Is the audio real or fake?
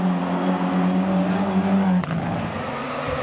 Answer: real